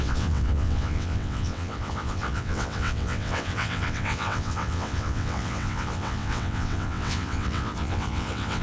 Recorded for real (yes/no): no